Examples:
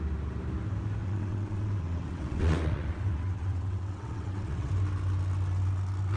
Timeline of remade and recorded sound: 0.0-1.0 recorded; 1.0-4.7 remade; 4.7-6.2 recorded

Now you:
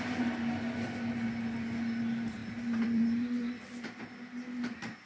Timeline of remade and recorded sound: 0.0-2.4 recorded; 2.4-4.0 remade; 4.0-5.1 recorded